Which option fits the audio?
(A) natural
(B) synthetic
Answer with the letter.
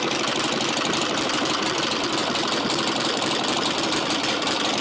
A